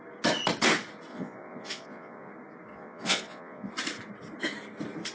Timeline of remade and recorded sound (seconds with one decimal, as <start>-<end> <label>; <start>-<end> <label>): 0.0-1.1 recorded; 1.1-2.3 remade; 2.3-2.7 recorded; 2.7-3.7 remade; 3.7-5.1 recorded